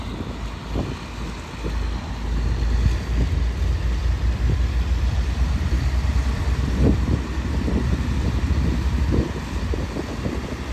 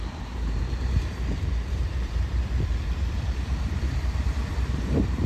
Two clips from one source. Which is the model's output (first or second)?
second